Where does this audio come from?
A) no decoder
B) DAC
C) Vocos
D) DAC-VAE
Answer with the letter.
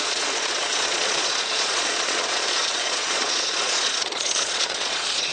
C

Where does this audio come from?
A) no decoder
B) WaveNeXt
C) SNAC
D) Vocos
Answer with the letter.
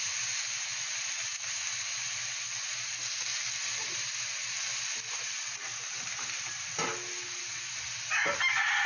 A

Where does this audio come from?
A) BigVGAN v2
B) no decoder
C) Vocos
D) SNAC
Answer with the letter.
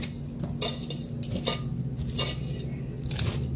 B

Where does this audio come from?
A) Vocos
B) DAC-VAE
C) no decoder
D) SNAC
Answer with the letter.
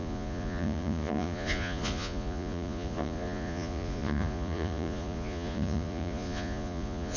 A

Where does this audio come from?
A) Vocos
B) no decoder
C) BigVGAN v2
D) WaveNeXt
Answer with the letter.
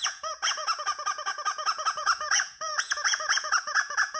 A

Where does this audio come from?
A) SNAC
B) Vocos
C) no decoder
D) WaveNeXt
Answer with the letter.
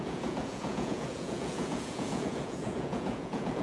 B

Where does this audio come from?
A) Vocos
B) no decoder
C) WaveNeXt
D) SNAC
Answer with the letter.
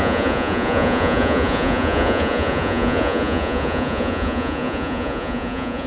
A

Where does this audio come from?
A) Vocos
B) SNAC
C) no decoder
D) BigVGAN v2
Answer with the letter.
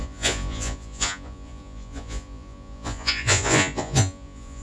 A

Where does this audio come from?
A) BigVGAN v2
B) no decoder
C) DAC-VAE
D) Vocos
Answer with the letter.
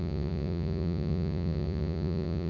D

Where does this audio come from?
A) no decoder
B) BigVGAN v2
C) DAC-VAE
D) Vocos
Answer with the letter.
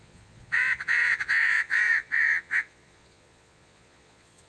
D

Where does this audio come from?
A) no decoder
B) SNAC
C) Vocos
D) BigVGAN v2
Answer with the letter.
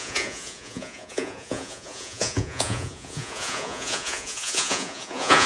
C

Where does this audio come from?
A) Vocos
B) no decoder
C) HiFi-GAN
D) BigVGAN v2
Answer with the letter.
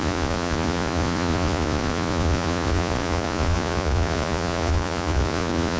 A